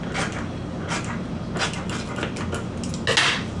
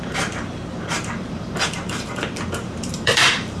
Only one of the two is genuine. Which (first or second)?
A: first